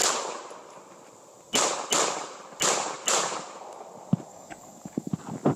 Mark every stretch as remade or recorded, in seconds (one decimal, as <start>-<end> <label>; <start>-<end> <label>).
0.0-4.3 recorded; 4.3-5.1 remade; 5.1-5.6 recorded